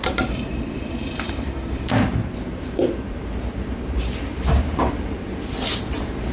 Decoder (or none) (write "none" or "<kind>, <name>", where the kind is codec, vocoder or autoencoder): vocoder, BigVGAN v2